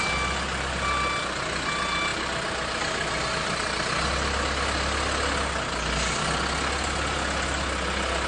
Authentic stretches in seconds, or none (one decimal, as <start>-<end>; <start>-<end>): 0.0-8.3